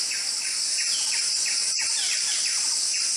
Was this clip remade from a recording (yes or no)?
no